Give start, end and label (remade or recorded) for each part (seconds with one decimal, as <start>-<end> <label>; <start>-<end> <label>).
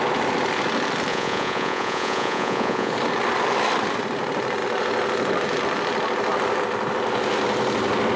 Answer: 0.0-1.1 recorded; 1.1-2.9 remade; 2.9-8.2 recorded